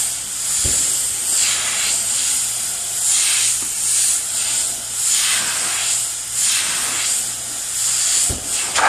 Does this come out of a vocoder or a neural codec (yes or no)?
no